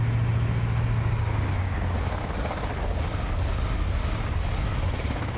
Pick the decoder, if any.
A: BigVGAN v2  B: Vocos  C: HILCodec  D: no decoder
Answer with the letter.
D